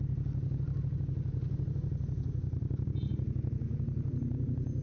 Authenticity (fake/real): real